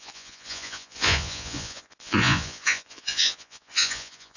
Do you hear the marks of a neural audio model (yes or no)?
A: yes